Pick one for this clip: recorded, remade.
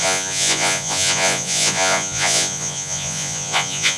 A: remade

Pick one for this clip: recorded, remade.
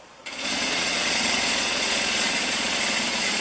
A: remade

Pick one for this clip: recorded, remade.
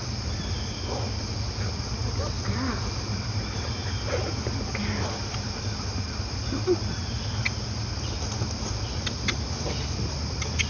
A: recorded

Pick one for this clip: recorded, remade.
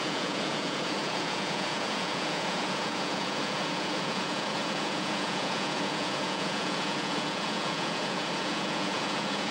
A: remade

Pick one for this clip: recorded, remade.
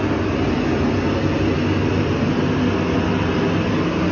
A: recorded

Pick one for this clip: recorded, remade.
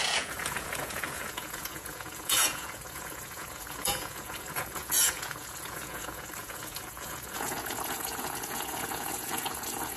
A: remade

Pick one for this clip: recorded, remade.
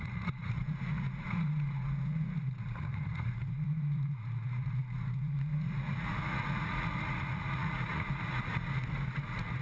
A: remade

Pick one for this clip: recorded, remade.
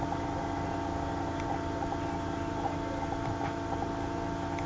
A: recorded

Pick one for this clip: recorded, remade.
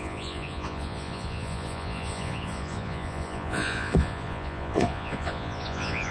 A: remade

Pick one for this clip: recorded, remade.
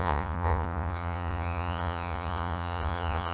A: remade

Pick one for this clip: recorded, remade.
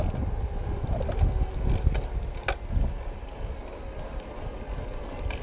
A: recorded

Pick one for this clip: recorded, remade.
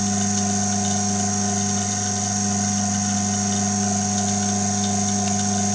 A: recorded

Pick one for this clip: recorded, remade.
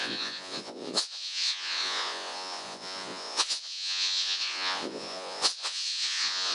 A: remade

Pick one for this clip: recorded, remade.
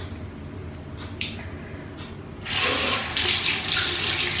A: recorded